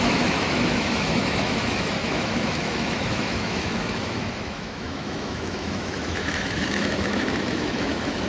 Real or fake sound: fake